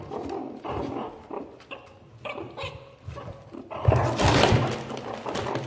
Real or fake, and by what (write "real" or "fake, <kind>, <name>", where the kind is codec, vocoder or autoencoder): real